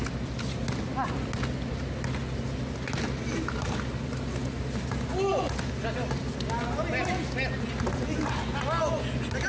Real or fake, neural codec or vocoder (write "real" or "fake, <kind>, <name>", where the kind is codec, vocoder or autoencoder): real